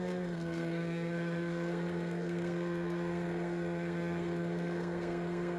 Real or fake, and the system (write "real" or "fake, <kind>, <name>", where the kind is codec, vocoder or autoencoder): fake, codec, SNAC